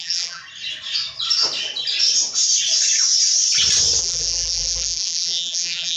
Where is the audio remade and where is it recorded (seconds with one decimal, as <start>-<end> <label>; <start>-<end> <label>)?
0.0-0.4 remade; 0.4-4.0 recorded; 4.0-6.0 remade